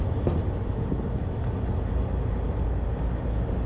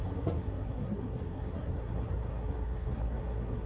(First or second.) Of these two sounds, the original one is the first